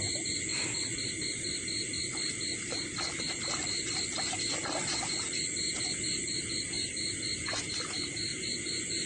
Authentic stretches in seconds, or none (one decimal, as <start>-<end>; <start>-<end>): 0.0-8.3